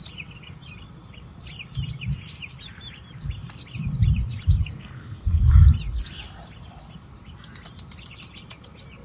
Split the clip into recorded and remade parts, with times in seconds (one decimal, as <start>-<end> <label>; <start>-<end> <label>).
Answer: 0.0-4.6 recorded; 4.6-5.4 remade; 5.4-9.0 recorded